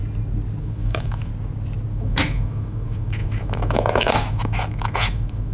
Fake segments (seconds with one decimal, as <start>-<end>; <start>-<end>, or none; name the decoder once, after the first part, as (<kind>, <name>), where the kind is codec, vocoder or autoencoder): 0.6-1.3 (autoencoder, DAC-VAE); 1.9-5.5